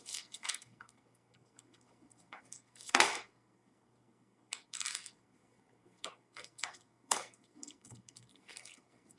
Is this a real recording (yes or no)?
no